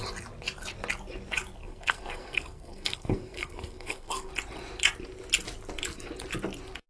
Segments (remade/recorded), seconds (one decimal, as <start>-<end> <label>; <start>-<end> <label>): 0.0-1.6 recorded; 1.6-4.3 remade; 4.3-6.9 recorded

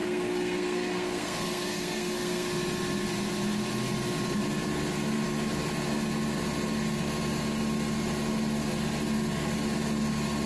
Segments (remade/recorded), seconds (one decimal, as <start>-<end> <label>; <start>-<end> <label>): 0.0-2.5 remade; 2.5-10.5 recorded

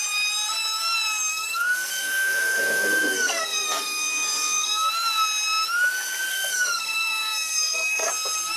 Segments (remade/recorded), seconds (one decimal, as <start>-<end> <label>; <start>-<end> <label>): 0.0-1.3 recorded; 1.3-4.9 remade; 4.9-6.3 recorded; 6.3-8.1 remade; 8.1-8.6 recorded

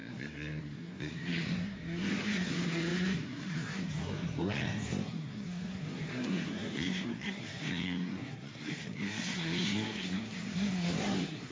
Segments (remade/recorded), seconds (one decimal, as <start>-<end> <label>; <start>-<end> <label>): 0.0-11.5 remade

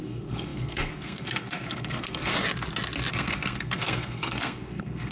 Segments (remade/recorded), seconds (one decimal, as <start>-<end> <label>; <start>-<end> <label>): 0.0-2.3 remade; 2.3-3.1 recorded; 3.1-5.1 remade

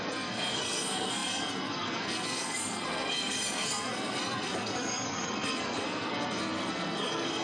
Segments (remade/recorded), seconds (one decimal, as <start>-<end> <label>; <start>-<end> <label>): 0.0-7.4 remade

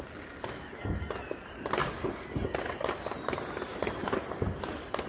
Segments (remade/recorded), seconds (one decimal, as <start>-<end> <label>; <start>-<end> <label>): 0.0-5.1 recorded

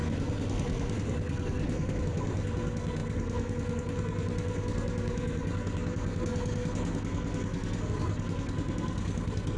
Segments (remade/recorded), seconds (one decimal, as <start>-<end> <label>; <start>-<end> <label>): 0.0-9.6 remade